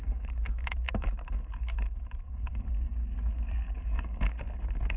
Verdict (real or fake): fake